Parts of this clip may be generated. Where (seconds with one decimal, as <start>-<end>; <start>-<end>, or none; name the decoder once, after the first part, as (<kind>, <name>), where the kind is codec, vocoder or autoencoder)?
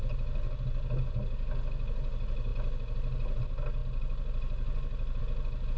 none